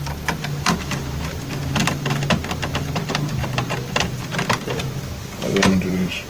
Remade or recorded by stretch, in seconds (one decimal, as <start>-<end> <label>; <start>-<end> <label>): 0.0-6.3 recorded